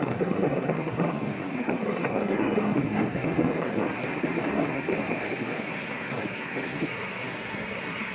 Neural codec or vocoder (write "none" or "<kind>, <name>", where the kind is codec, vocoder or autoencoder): codec, SNAC